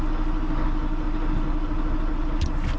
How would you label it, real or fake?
real